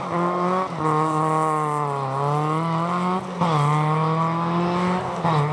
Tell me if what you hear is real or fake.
real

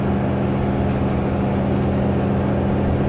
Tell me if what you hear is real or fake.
real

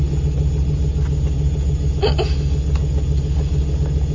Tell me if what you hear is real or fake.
real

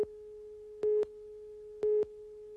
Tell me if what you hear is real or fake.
real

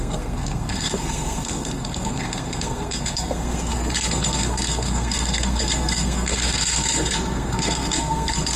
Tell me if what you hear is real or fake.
fake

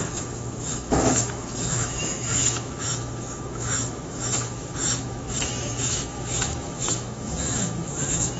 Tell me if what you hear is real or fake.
fake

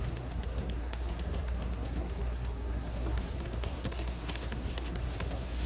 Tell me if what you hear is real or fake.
fake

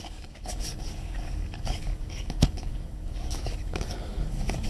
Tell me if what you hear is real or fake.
fake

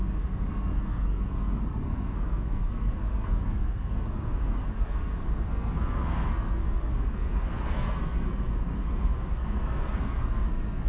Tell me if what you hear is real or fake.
fake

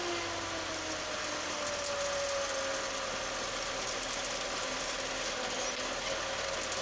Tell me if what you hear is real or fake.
real